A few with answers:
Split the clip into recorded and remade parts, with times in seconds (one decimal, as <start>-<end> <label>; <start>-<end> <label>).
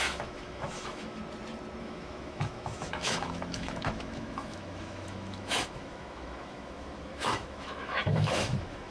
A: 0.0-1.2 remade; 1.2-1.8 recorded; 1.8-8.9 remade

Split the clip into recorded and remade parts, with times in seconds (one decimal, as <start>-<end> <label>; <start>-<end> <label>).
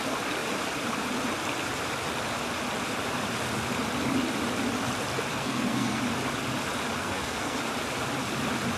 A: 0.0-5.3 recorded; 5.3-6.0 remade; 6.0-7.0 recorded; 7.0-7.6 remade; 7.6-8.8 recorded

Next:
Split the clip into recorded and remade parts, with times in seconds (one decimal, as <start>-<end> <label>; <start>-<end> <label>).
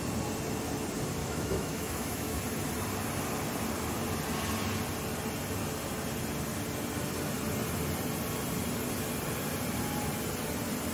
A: 0.0-1.2 recorded; 1.2-2.4 remade; 2.4-10.9 recorded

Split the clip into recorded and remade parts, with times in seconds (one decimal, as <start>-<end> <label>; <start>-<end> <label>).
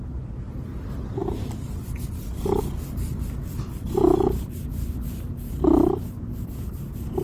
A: 0.0-7.2 recorded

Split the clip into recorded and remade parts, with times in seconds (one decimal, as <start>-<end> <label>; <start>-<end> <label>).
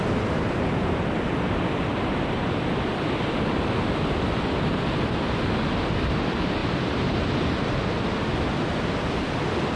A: 0.0-6.6 recorded; 6.6-7.5 remade; 7.5-9.8 recorded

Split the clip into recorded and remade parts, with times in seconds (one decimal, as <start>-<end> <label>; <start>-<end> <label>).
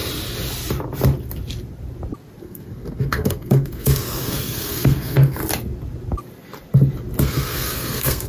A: 0.0-2.4 recorded; 2.4-5.4 remade; 5.4-7.2 recorded; 7.2-8.3 remade